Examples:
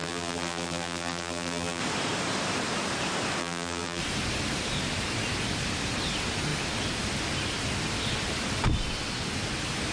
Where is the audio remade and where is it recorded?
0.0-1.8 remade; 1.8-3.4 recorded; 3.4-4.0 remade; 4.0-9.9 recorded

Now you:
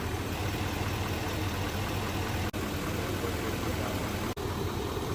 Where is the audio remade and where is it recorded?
0.0-0.4 remade; 0.4-3.5 recorded; 3.5-4.0 remade; 4.0-4.6 recorded; 4.6-5.1 remade

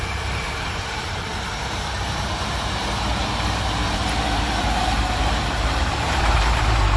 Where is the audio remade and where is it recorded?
0.0-7.0 remade

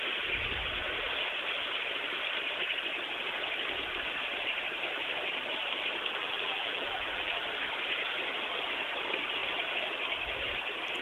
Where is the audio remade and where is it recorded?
0.0-6.2 recorded; 6.2-7.4 remade; 7.4-11.0 recorded

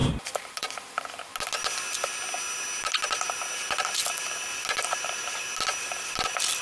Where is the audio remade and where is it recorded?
0.0-0.8 remade; 0.8-6.6 recorded

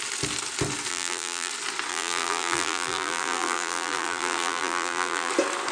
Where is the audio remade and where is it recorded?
0.0-0.9 recorded; 0.9-1.5 remade; 1.5-1.9 recorded; 1.9-5.3 remade; 5.3-5.7 recorded

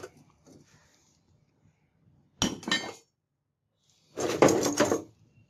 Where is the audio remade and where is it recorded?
0.0-0.8 remade; 0.8-4.1 recorded; 4.1-5.5 remade

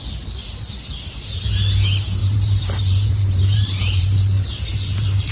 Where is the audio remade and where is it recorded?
0.0-0.4 recorded; 0.4-1.2 remade; 1.2-2.2 recorded; 2.2-5.3 remade